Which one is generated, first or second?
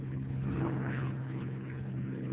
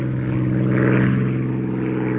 first